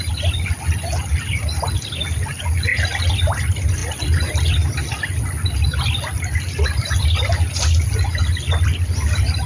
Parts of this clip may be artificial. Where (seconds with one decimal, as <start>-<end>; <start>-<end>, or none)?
none